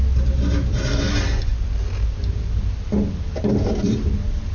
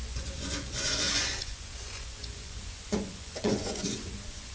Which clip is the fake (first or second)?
second